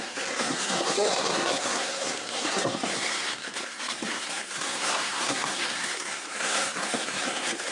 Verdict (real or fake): fake